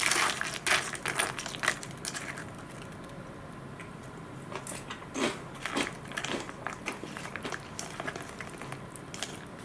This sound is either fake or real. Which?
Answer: real